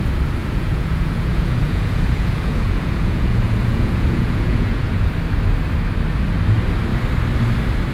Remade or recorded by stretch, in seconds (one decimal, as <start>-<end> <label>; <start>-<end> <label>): 0.0-0.4 recorded; 0.4-5.1 remade; 5.1-7.9 recorded